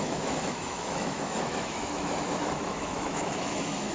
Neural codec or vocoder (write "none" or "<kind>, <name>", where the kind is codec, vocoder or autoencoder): autoencoder, DAC-VAE